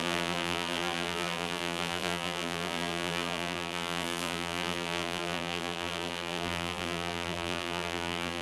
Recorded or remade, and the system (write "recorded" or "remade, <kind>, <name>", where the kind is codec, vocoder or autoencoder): remade, vocoder, BigVGAN v2